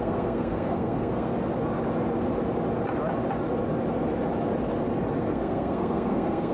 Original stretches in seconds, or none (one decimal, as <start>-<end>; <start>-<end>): 1.3-5.2